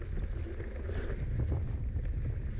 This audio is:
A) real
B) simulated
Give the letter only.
A